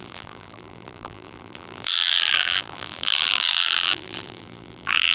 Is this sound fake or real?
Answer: fake